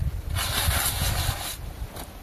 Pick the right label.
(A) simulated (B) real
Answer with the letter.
B